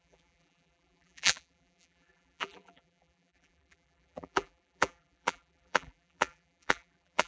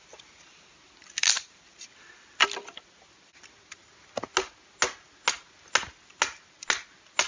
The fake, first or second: first